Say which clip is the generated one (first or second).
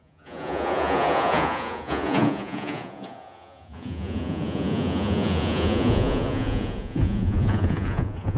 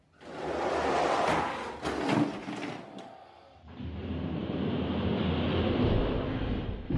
first